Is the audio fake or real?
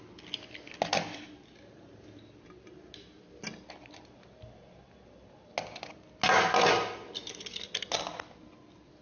real